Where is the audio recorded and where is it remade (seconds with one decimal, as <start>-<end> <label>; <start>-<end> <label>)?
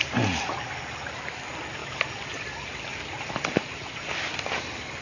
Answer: 0.0-5.0 recorded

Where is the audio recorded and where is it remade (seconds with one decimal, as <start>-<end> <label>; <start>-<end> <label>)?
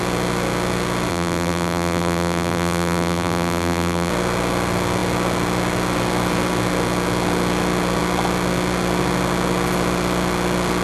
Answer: 0.0-1.1 recorded; 1.1-4.1 remade; 4.1-10.8 recorded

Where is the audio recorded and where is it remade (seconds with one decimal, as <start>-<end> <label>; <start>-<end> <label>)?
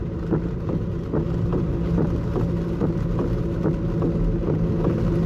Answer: 0.0-0.9 remade; 0.9-5.3 recorded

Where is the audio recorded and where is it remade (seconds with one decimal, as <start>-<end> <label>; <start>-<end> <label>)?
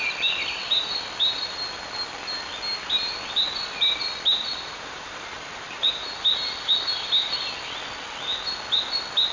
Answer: 0.0-4.3 recorded; 4.3-6.2 remade; 6.2-9.3 recorded